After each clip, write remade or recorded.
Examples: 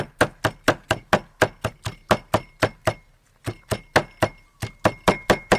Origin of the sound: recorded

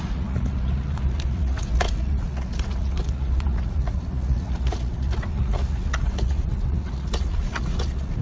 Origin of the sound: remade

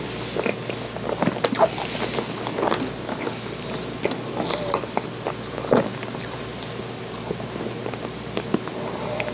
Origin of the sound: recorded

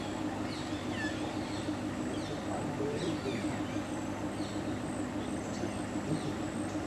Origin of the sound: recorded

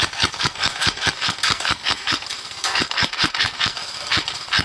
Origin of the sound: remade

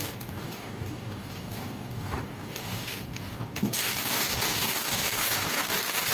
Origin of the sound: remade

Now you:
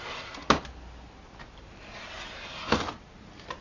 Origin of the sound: recorded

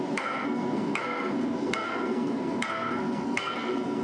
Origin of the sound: remade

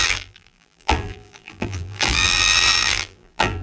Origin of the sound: remade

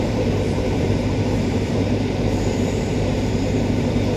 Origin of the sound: remade